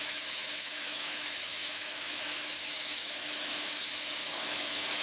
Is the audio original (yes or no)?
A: no